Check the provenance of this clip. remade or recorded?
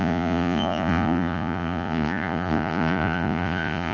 remade